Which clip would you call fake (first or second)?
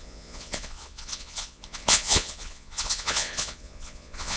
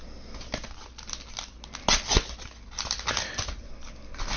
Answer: first